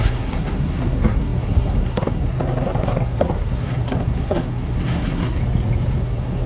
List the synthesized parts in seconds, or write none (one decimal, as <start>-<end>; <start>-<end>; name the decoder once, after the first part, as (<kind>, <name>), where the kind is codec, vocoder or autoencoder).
0.0-5.4 (codec, SNAC); 6.0-6.5